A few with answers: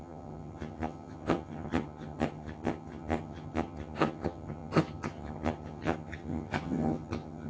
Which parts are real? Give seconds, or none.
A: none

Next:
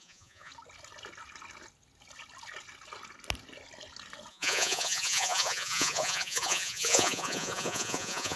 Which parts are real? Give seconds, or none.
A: 0.5-4.3

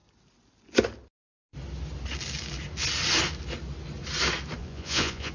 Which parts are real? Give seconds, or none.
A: 0.0-4.6

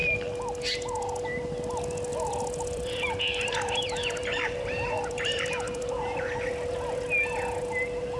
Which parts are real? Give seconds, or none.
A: 0.0-2.1; 5.9-8.2

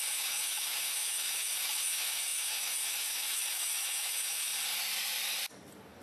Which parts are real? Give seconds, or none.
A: 4.5-6.0

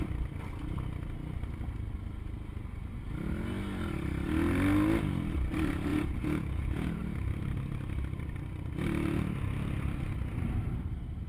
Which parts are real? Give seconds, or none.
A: 0.0-5.9; 7.0-11.3

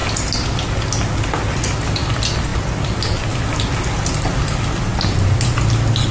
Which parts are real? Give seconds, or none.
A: 0.0-6.1